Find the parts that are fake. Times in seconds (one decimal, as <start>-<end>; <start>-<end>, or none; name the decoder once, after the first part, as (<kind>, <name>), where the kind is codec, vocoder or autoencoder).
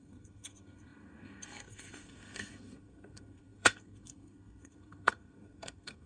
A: 0.0-6.1 (codec, SNAC)